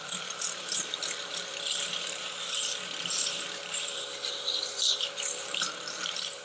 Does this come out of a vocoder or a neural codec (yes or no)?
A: yes